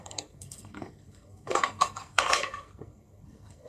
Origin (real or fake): fake